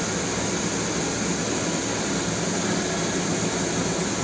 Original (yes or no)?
yes